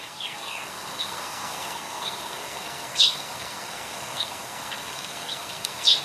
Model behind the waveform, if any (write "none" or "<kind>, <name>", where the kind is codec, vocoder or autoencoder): codec, SNAC